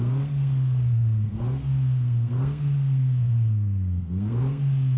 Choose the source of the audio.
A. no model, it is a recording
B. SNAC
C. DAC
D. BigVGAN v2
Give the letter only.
B